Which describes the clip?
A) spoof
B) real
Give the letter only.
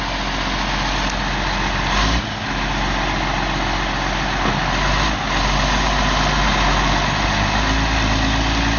B